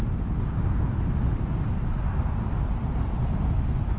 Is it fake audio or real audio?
real